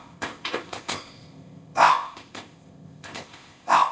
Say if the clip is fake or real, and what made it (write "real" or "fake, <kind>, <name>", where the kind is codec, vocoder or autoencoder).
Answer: fake, codec, ZipCodec